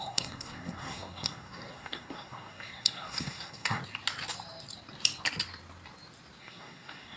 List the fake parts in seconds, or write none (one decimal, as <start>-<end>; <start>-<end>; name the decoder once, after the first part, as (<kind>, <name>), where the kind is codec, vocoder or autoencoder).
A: 0.0-3.8 (codec, SNAC); 6.4-7.2